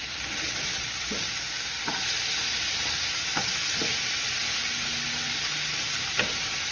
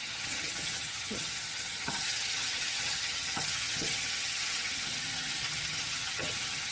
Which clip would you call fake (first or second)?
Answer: second